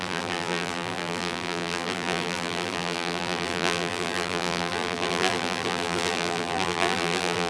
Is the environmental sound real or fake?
fake